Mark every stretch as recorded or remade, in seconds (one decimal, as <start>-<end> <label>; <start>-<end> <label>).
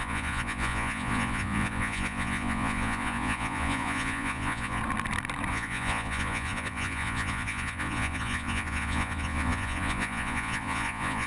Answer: 0.0-4.8 remade; 4.8-5.5 recorded; 5.5-11.3 remade